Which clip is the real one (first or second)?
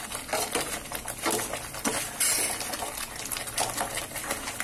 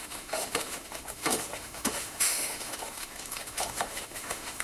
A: first